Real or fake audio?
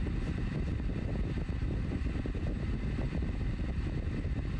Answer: real